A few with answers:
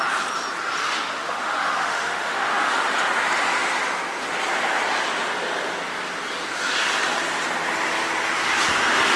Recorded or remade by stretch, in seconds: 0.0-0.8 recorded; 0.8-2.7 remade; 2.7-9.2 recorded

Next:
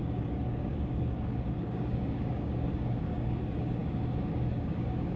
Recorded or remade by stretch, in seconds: 0.0-5.2 remade

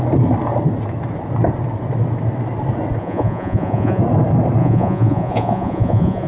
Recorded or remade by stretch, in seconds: 0.0-3.0 recorded; 3.0-4.0 remade; 4.0-4.6 recorded; 4.6-6.3 remade

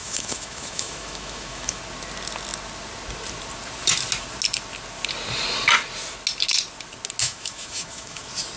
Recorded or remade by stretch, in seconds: 0.0-1.8 remade; 1.8-7.2 recorded; 7.2-8.2 remade; 8.2-8.6 recorded

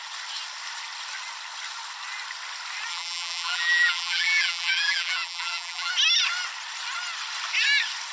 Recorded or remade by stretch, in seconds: 0.0-2.9 recorded; 2.9-5.9 remade; 5.9-8.1 recorded

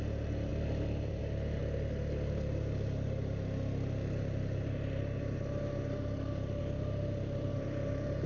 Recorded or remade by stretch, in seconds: 0.0-0.5 recorded; 0.5-1.2 remade; 1.2-8.3 recorded

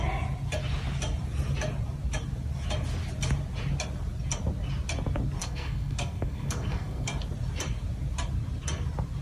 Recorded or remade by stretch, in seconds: 0.0-5.4 recorded; 5.4-7.1 remade; 7.1-9.2 recorded

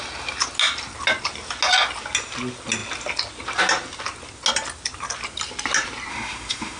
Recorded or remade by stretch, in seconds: 0.0-6.1 recorded; 6.1-6.8 remade